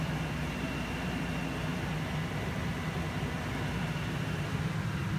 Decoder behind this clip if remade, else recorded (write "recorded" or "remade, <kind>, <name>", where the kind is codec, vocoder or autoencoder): recorded